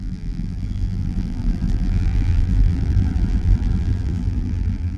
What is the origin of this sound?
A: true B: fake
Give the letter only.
B